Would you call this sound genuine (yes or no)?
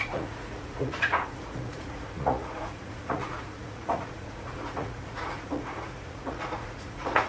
no